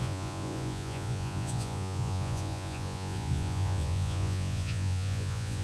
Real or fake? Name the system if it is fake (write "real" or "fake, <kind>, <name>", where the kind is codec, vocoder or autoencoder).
fake, vocoder, Vocos